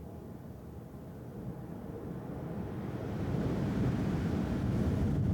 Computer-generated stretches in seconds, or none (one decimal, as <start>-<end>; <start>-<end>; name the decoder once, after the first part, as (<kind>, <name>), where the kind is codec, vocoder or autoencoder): 3.0-4.4 (vocoder, BigVGAN v2)